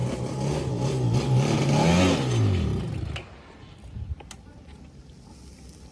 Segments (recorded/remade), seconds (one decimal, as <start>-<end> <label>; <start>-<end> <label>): 0.0-5.9 recorded